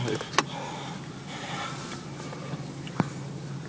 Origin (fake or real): real